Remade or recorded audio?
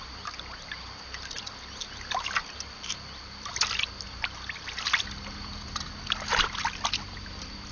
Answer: recorded